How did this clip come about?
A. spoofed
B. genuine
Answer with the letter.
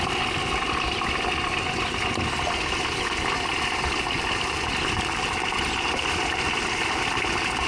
B